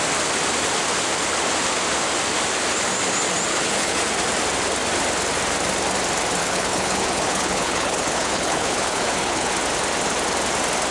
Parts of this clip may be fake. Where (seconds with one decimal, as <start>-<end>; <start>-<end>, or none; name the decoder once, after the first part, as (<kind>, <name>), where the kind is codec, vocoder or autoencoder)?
3.5-4.0 (codec, HILCodec); 6.4-9.5